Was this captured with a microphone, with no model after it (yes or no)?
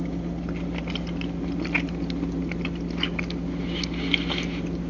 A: yes